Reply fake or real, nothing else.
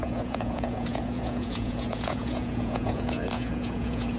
fake